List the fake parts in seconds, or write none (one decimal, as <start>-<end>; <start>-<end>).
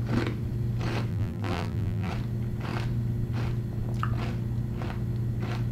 1.1-2.1